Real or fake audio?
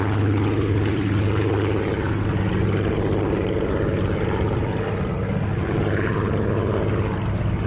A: real